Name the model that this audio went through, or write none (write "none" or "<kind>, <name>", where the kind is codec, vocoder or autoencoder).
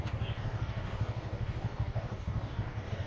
codec, DAC